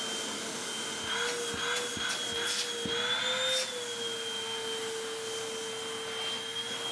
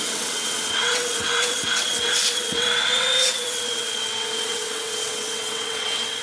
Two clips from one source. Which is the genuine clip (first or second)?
first